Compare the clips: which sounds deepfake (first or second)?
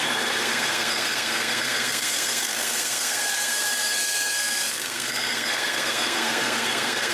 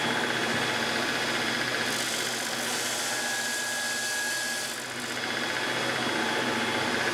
first